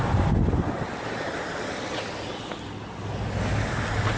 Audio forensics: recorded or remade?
recorded